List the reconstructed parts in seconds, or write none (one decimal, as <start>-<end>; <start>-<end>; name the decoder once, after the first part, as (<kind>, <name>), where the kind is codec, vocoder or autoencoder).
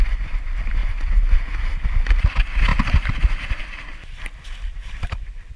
0.0-0.8 (vocoder, BigVGAN v2); 1.4-5.6